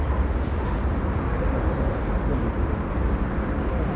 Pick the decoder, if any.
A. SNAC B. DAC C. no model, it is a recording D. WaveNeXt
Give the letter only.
C